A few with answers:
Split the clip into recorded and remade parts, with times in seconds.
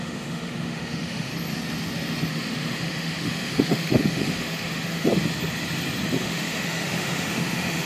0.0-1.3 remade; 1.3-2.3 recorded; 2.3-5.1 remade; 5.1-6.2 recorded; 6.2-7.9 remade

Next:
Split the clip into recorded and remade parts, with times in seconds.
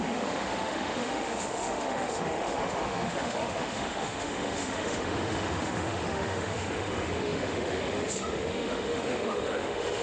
0.0-10.0 remade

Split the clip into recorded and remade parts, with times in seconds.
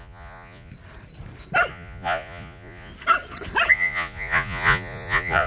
0.0-0.7 remade; 0.7-1.7 recorded; 1.7-2.9 remade; 2.9-3.7 recorded; 3.7-5.5 remade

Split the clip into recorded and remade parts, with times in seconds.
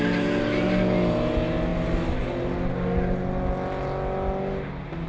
0.0-5.1 recorded